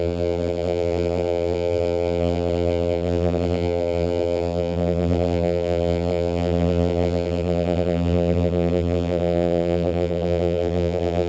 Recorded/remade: remade